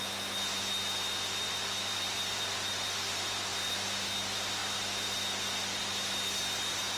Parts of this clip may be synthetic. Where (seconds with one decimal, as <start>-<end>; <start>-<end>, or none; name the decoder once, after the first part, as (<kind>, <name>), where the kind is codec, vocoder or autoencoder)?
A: 3.5-4.1 (vocoder, BigVGAN v2)